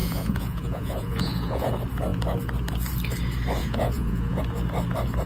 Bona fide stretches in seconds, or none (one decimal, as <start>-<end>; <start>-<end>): 1.7-3.6; 4.4-5.3